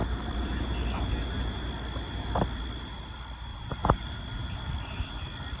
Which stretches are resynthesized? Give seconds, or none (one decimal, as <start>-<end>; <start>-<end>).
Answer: 3.5-4.2